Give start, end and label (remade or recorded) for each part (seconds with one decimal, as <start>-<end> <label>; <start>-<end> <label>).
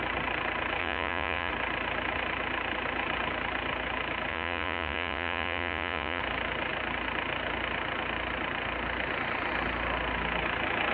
0.0-0.8 recorded; 0.8-1.5 remade; 1.5-4.3 recorded; 4.3-6.2 remade; 6.2-10.9 recorded